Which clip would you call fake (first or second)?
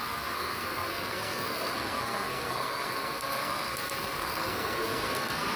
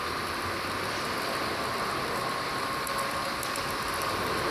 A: first